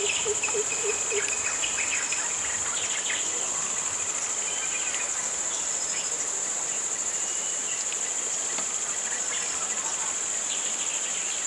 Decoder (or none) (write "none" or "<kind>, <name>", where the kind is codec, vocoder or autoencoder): none